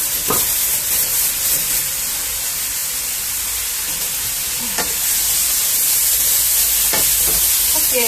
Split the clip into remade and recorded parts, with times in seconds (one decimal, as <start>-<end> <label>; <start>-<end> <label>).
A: 0.0-2.8 recorded; 2.8-3.3 remade; 3.3-8.1 recorded

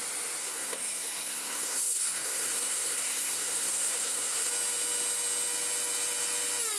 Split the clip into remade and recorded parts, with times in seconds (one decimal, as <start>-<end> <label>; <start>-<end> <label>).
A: 0.0-0.4 recorded; 0.4-4.5 remade; 4.5-6.8 recorded

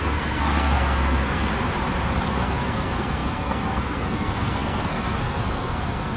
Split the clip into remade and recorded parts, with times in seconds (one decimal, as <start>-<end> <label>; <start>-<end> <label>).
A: 0.0-1.5 remade; 1.5-2.3 recorded; 2.3-6.2 remade